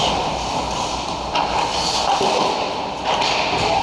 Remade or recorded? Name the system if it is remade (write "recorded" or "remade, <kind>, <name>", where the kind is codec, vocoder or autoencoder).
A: recorded